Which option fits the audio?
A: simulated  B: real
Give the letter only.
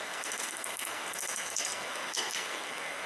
A